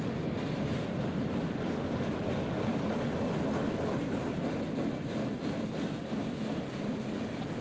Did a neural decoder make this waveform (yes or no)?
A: no